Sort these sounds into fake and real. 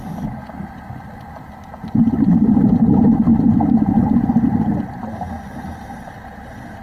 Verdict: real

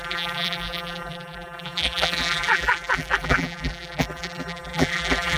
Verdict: fake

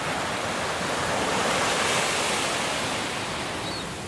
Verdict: real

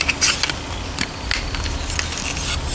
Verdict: real